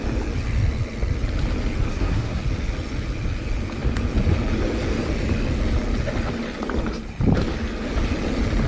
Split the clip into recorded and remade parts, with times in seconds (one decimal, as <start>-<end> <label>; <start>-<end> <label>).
0.0-1.9 recorded; 1.9-2.4 remade; 2.4-8.7 recorded